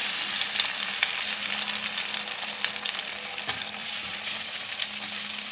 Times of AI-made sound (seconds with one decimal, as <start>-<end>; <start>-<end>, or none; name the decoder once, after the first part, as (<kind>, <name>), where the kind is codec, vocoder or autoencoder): 3.8-4.6 (vocoder, Vocos)